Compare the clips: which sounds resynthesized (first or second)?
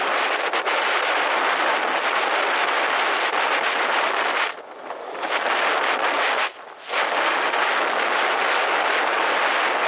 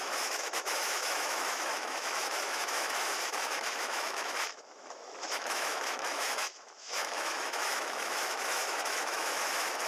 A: second